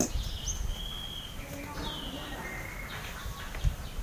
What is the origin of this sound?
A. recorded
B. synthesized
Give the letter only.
A